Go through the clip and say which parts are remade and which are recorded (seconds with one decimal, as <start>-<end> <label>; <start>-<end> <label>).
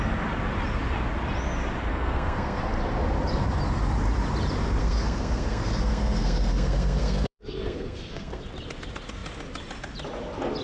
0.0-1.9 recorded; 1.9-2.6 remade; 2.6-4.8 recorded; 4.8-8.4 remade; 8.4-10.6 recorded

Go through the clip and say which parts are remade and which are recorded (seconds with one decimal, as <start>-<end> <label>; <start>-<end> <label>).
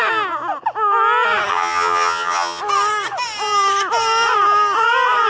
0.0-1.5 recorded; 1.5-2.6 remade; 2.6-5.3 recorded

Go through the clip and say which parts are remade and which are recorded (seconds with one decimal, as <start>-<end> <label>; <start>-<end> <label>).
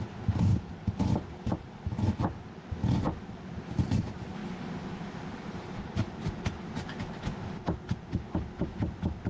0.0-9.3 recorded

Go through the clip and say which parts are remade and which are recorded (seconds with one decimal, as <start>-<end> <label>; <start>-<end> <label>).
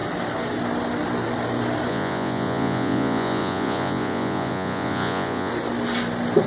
0.0-1.9 recorded; 1.9-5.5 remade; 5.5-6.5 recorded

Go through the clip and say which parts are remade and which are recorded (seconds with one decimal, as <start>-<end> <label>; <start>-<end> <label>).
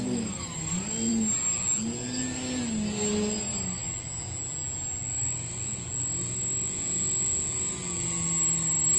0.0-9.0 recorded